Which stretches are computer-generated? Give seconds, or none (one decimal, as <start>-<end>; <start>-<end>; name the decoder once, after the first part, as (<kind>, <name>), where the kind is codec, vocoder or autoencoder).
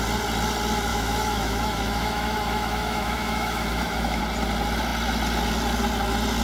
0.9-4.2 (autoencoder, DAC-VAE)